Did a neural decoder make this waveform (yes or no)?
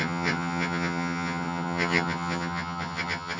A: yes